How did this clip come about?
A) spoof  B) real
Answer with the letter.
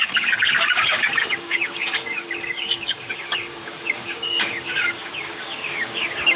A